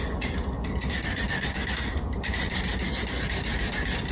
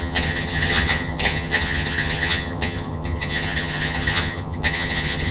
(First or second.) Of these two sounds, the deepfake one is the second